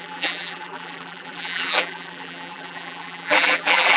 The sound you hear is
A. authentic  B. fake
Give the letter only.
B